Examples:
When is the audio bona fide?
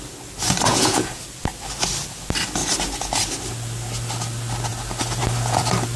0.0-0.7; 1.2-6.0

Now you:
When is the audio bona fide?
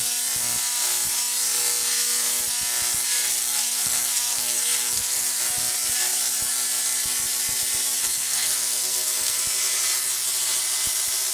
0.0-3.4; 5.4-8.0; 9.4-11.3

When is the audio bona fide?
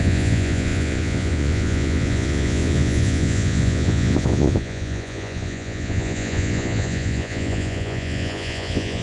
none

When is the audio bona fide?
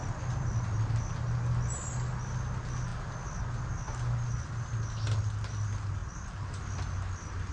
0.0-7.5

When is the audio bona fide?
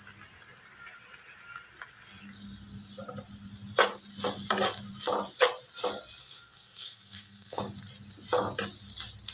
0.0-6.2; 7.6-9.3